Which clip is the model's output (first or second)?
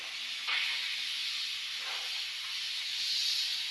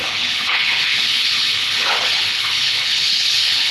second